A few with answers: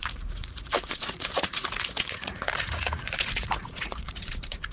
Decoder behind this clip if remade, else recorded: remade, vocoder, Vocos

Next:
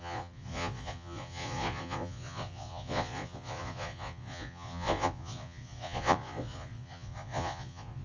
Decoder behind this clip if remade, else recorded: remade, vocoder, Vocos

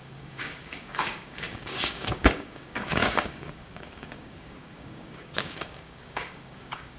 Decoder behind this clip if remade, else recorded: remade, codec, DAC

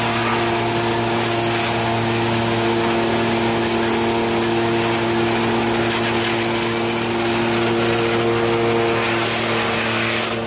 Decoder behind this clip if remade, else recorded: recorded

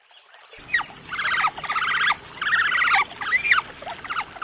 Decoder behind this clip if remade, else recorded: recorded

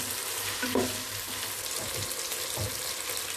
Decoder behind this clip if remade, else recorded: recorded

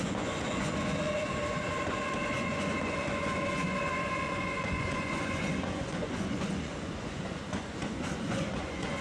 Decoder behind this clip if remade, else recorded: remade, vocoder, Vocos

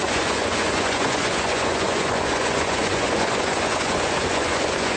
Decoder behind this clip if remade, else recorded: remade, vocoder, Vocos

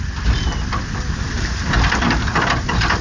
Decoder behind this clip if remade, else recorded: recorded